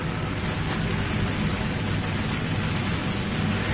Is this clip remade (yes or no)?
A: no